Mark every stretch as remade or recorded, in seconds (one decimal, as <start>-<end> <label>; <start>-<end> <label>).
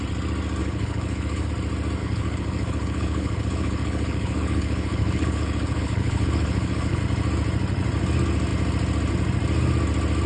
0.0-0.6 recorded; 0.6-1.5 remade; 1.5-2.0 recorded; 2.0-7.0 remade; 7.0-10.3 recorded